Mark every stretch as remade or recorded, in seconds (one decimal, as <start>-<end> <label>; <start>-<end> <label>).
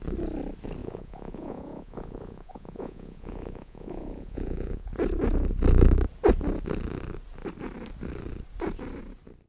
0.0-0.8 recorded; 0.8-4.9 remade; 4.9-9.5 recorded